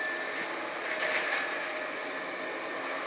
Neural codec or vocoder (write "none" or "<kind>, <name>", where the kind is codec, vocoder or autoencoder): none